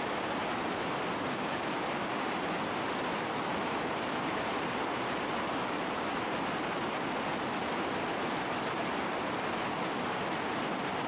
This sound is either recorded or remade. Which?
recorded